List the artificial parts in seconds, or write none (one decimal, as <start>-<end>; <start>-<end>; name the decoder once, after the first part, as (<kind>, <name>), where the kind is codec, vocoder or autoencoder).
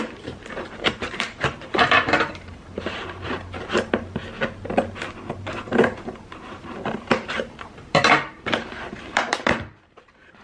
0.0-4.2 (vocoder, BigVGAN v2); 5.3-10.4